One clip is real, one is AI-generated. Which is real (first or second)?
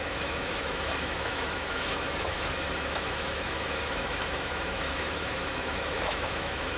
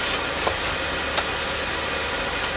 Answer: second